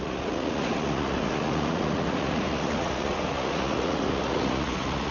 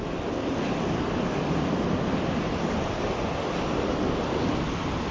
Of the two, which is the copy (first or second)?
first